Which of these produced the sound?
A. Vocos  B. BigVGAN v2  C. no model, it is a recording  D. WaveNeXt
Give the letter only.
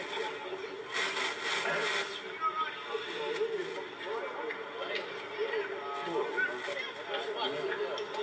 C